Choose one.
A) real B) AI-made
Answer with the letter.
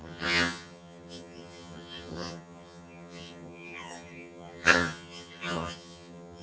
B